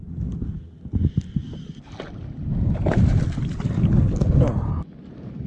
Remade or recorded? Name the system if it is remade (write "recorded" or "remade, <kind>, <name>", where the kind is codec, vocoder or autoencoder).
recorded